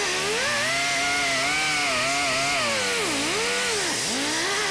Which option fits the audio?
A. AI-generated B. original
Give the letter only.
B